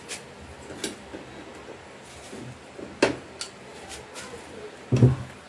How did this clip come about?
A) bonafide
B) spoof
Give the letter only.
A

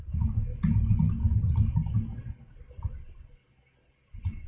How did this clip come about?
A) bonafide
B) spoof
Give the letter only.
A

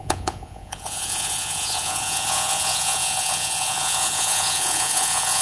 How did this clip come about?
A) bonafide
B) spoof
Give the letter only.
B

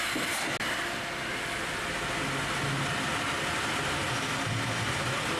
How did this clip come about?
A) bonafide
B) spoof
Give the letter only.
A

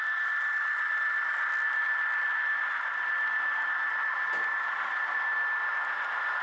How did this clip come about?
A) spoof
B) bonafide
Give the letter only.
B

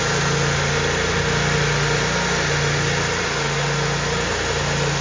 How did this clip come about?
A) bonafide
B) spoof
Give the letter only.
A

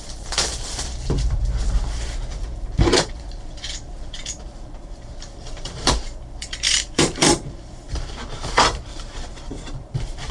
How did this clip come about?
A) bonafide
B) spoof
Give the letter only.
B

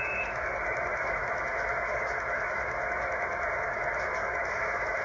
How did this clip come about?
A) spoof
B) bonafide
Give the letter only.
A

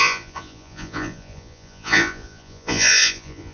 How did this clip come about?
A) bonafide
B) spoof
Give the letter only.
B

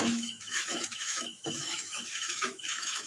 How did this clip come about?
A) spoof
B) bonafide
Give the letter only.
A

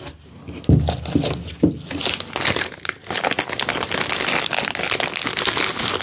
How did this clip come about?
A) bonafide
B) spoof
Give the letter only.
A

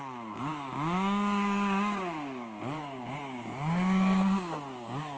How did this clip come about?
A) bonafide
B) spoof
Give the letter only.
B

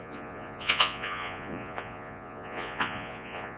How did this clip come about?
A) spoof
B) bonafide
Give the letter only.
A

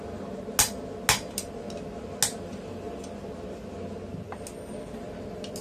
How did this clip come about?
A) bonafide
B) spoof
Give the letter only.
A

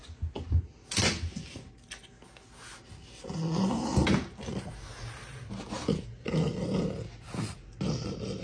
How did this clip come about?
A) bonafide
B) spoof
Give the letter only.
A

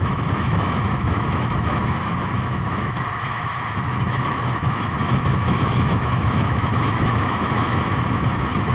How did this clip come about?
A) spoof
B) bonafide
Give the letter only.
A